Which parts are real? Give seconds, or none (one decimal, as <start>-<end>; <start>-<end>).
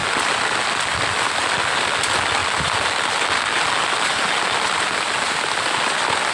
0.0-6.3